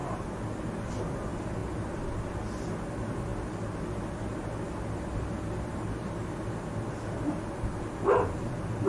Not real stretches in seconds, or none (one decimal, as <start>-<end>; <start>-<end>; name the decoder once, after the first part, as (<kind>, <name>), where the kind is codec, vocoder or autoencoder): none

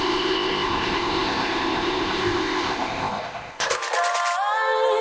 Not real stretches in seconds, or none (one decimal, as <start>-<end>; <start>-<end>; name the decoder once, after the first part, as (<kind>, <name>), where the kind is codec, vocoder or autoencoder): 0.0-3.8 (codec, ZipCodec)